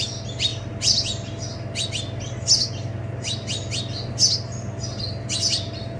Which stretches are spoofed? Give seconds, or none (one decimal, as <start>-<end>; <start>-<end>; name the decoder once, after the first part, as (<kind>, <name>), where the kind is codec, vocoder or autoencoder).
none